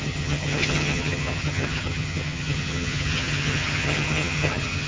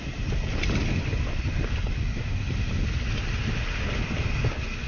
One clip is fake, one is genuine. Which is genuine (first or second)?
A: second